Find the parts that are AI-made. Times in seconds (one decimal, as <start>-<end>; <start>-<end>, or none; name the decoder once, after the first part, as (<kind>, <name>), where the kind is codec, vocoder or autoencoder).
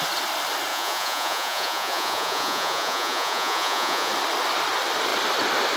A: 0.7-4.1 (vocoder, Vocos)